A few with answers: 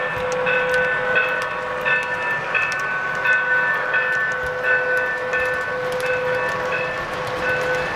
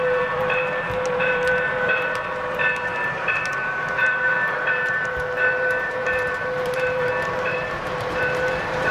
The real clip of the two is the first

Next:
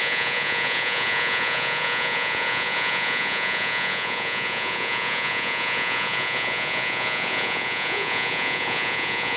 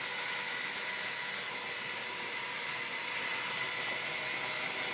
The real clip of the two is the second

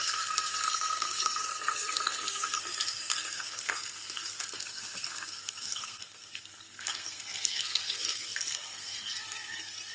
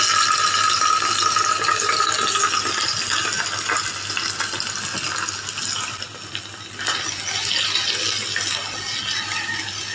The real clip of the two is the second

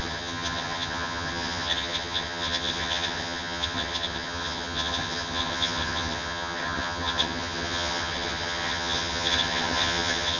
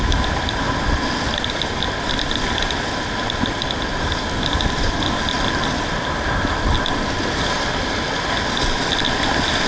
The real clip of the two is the second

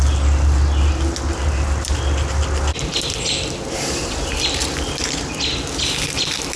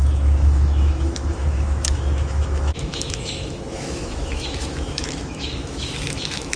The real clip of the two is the first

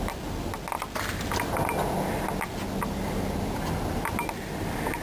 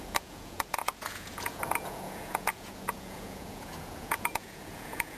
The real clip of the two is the first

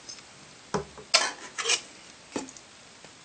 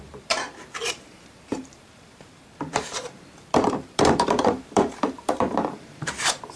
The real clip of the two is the first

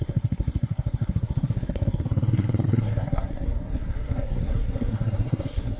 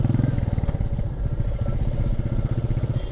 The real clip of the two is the second